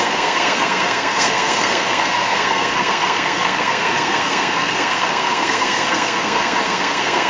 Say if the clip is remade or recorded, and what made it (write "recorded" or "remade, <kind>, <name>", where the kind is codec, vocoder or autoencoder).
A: remade, codec, SNAC